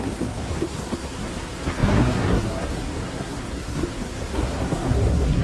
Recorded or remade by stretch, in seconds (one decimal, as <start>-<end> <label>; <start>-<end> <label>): 0.0-5.4 remade